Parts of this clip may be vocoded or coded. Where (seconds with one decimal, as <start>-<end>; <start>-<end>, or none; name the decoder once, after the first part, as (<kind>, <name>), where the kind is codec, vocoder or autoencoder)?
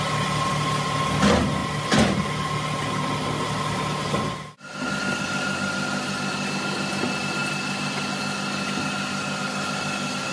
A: none